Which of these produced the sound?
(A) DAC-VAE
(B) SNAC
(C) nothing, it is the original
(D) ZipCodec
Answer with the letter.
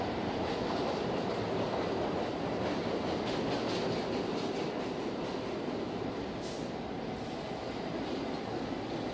C